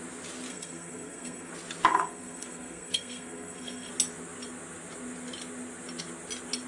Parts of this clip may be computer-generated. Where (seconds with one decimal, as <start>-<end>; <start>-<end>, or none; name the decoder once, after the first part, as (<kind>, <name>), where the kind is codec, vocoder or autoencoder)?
0.5-1.5 (codec, SNAC); 1.9-3.9